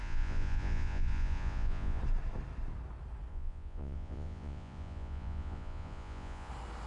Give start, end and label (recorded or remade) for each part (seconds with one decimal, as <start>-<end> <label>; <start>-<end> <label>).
0.0-2.0 remade; 2.0-3.3 recorded; 3.3-6.5 remade; 6.5-6.9 recorded